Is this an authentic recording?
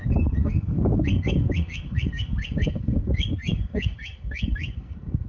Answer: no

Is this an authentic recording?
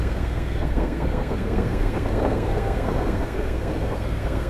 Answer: no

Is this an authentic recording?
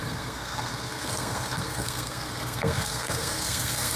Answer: no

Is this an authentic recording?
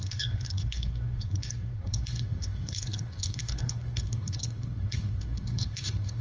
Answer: no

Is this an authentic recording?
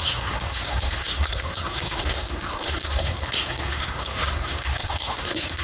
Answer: no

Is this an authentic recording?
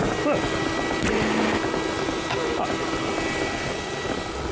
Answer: yes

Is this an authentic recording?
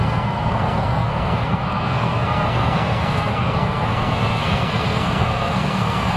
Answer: no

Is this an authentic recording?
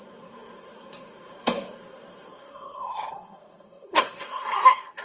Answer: no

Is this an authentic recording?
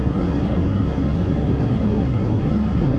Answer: no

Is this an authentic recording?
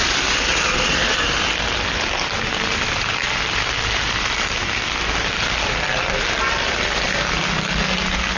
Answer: yes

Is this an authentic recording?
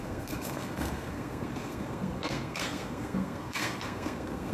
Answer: no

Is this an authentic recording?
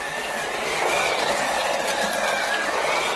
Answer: yes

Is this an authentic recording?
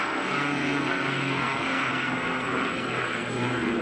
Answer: no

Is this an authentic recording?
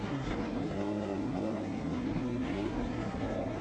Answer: no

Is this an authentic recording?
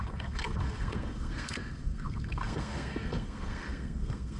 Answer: no